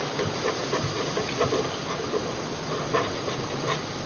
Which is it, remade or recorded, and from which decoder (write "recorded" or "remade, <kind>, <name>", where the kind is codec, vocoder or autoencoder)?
recorded